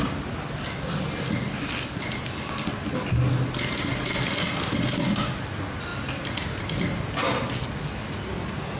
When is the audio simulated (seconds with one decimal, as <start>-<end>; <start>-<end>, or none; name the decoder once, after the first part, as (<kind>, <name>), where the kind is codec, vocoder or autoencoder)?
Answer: none